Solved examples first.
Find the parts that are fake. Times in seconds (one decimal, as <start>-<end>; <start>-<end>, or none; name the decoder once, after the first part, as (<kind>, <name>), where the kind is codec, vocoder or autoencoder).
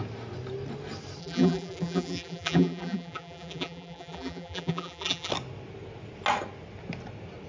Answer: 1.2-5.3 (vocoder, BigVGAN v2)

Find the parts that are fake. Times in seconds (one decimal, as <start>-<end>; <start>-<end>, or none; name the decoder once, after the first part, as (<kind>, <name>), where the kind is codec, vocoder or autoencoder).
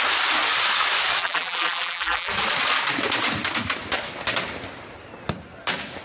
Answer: 1.2-2.3 (vocoder, BigVGAN v2)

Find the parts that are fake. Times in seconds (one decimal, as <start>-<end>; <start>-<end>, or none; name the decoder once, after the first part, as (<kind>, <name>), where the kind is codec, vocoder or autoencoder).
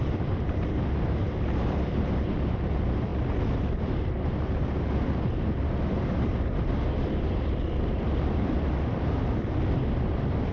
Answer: 0.0-3.1 (vocoder, BigVGAN v2); 5.7-10.5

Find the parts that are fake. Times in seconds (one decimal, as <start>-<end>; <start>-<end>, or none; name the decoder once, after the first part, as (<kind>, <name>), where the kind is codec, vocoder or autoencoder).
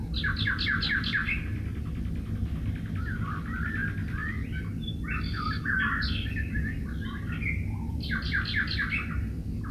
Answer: none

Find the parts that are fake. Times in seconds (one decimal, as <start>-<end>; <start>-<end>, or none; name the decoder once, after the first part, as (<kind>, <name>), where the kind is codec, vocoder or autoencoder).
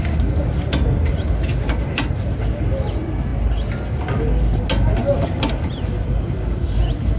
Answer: none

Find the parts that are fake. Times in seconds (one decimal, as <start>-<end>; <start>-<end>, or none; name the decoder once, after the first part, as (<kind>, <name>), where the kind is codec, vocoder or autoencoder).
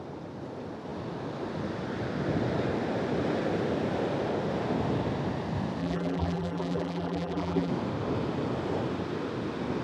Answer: 5.8-7.7 (vocoder, BigVGAN v2)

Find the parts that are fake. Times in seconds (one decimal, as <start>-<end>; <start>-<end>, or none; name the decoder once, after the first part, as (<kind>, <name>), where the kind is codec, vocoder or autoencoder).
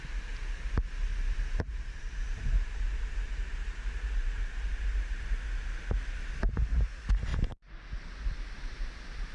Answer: 1.1-5.3 (vocoder, BigVGAN v2)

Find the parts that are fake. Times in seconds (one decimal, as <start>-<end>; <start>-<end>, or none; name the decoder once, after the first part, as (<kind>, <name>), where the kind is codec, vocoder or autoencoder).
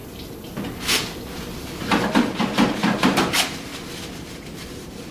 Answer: 2.4-3.7 (vocoder, BigVGAN v2); 4.5-5.1